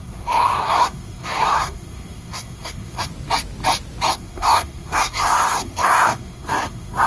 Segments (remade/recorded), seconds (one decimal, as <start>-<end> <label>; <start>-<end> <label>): 0.0-3.1 remade; 3.1-4.1 recorded; 4.1-7.1 remade